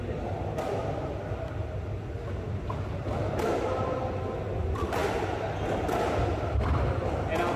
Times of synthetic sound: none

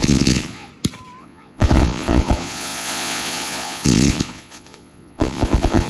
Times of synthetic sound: 0.0-0.7 (vocoder, Vocos); 1.2-5.9

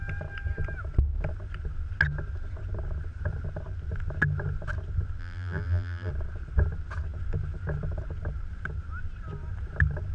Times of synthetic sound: 5.2-6.1 (vocoder, BigVGAN v2)

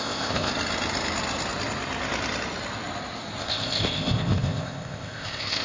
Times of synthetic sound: 0.0-0.5 (codec, ZipCodec); 3.4-5.6